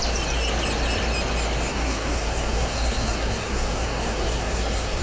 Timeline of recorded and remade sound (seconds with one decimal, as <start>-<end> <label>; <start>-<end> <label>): 0.0-1.7 recorded; 1.7-5.0 remade